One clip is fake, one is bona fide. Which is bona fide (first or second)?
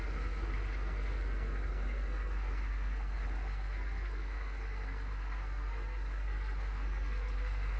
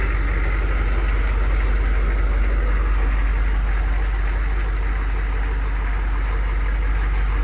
second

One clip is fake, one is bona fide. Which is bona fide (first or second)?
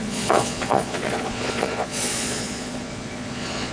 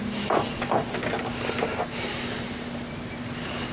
second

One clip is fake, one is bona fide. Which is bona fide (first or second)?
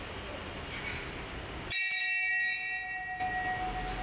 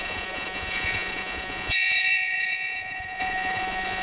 first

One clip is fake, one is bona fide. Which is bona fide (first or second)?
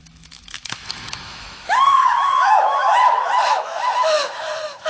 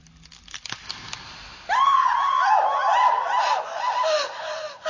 second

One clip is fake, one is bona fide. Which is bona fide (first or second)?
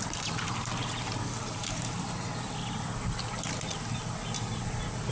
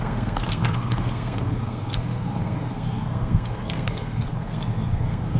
first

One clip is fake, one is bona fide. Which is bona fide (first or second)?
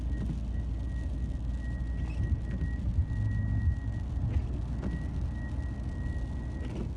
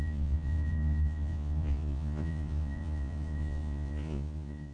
first